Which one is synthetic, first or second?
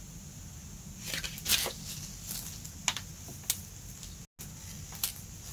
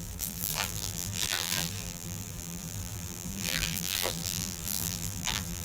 second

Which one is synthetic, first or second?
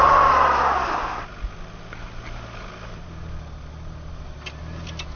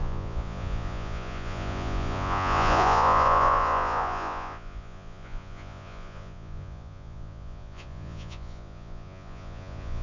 second